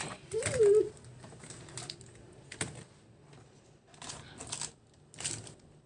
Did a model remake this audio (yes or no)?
no